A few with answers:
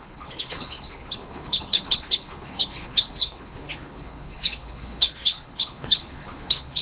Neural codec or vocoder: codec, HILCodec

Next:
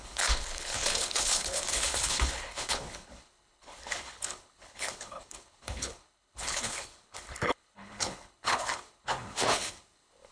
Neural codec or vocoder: codec, HILCodec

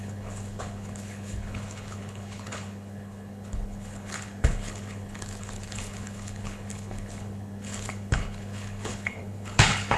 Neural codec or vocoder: codec, HILCodec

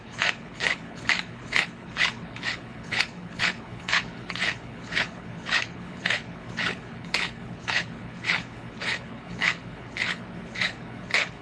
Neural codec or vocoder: codec, HILCodec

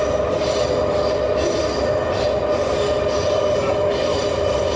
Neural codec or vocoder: none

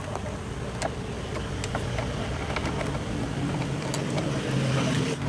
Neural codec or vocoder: none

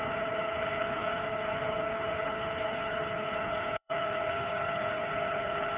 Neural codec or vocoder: codec, HILCodec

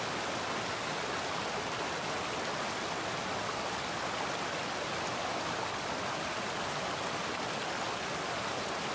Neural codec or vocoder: none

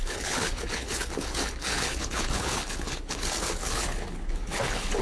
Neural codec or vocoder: codec, HILCodec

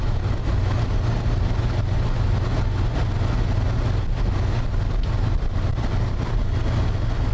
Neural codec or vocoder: none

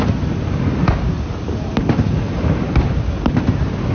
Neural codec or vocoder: none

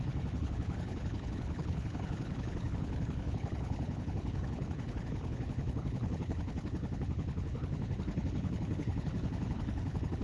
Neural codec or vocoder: codec, HILCodec